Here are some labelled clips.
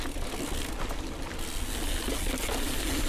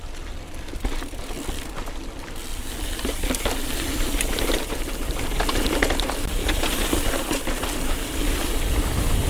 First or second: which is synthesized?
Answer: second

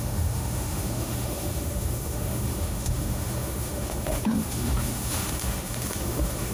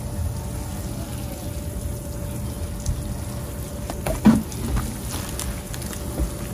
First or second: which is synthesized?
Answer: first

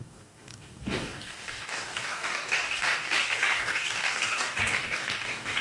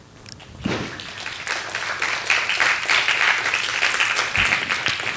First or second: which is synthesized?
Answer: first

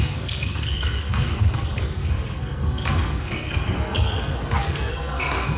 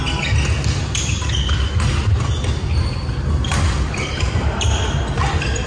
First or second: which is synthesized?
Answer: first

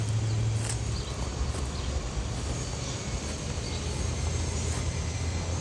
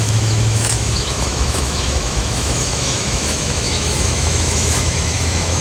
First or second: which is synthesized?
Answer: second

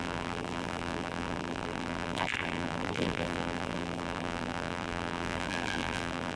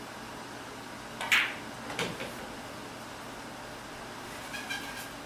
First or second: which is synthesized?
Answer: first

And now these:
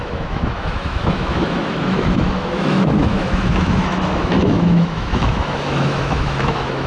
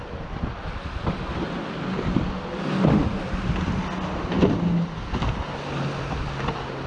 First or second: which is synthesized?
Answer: first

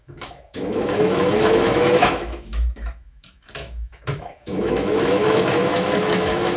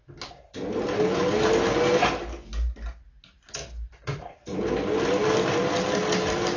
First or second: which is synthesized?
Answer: first